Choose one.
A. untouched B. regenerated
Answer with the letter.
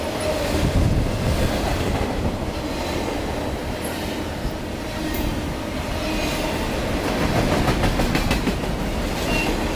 A